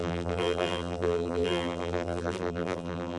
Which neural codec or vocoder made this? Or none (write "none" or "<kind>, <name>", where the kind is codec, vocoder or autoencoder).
vocoder, BigVGAN v2